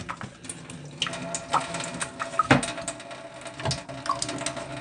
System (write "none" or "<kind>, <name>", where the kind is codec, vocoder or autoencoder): none